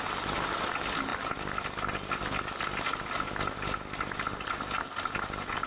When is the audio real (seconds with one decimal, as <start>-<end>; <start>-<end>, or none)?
0.0-5.7